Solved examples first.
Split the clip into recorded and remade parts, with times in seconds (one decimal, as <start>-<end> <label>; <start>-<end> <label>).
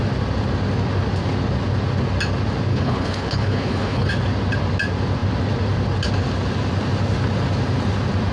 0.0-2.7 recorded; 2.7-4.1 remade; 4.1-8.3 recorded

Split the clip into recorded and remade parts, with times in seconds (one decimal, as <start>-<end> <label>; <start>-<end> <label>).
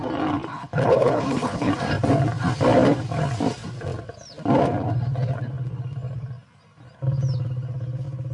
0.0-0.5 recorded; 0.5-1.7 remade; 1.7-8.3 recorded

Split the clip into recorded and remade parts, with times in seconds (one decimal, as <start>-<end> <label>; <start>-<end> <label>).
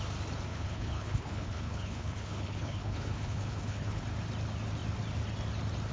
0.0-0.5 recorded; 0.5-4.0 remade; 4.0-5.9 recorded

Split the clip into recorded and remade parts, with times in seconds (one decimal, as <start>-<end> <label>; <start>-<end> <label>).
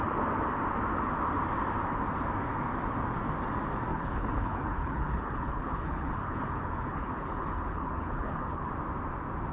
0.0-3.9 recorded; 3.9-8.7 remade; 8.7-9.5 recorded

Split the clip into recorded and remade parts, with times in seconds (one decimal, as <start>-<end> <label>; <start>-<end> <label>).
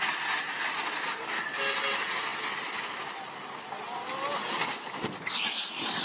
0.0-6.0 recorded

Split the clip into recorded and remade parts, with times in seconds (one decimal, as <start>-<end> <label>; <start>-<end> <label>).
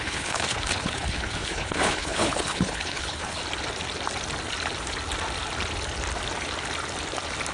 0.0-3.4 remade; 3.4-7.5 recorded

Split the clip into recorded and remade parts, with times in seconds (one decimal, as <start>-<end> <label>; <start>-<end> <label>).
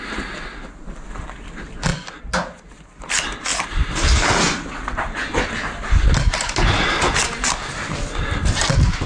0.0-9.1 recorded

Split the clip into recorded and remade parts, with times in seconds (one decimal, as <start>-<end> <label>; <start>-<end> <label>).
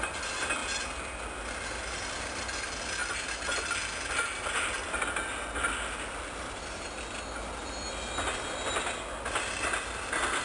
0.0-10.4 recorded